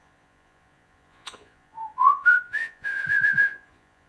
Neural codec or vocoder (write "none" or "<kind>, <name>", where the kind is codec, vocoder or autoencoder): vocoder, Vocos